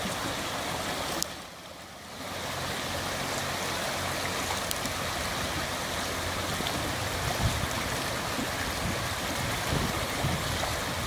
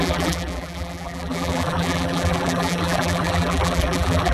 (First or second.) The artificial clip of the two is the second